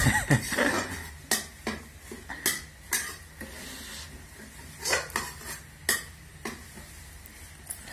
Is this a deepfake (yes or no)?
no